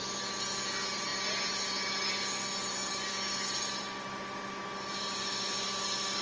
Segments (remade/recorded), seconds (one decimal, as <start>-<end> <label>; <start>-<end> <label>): 0.0-6.2 recorded